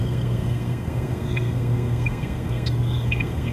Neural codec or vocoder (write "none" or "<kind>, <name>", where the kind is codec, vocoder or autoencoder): codec, SNAC